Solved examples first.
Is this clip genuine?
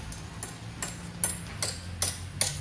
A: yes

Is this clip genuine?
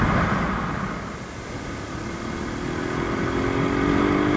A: yes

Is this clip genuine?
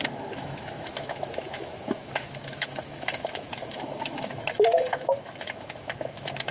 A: no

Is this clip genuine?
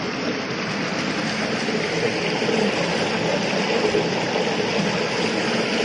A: yes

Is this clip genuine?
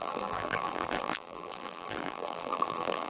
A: no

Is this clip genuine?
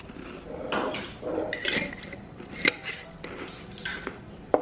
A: yes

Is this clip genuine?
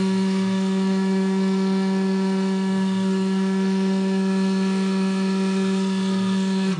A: no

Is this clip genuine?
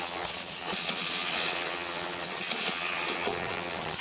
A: no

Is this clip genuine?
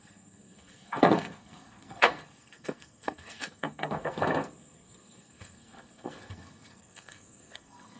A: no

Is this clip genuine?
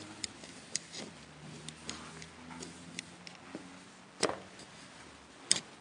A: yes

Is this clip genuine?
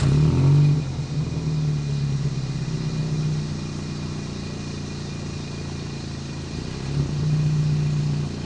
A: yes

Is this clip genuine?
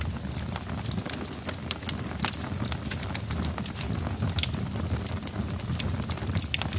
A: yes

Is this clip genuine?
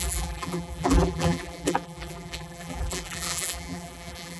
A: no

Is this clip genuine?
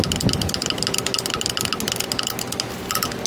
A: yes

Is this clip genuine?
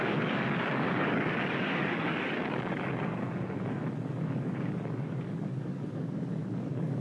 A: no